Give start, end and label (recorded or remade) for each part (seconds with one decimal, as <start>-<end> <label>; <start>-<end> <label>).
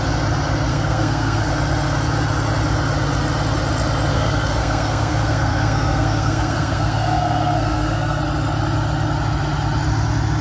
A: 0.0-0.7 recorded; 0.7-1.5 remade; 1.5-4.1 recorded; 4.1-8.2 remade; 8.2-10.4 recorded